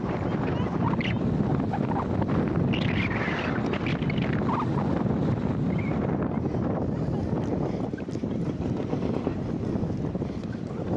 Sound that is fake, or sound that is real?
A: real